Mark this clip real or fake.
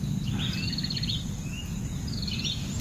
real